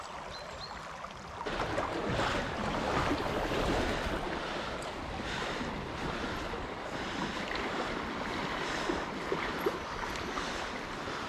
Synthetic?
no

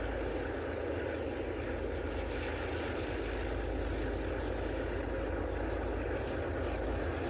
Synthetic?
no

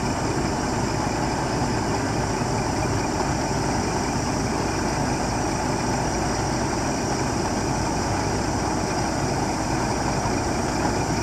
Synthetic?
yes